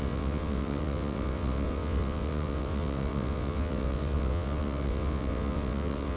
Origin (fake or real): fake